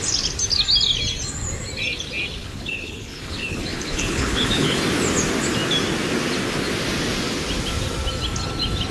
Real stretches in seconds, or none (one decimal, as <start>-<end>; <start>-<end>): 0.0-2.4; 4.8-8.9